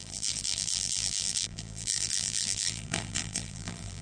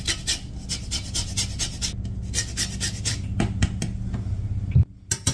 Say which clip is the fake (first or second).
first